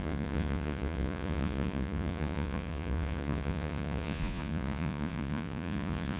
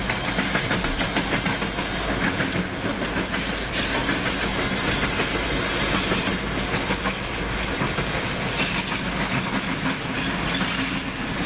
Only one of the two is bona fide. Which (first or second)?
second